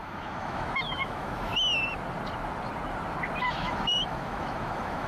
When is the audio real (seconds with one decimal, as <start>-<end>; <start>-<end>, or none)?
1.5-3.5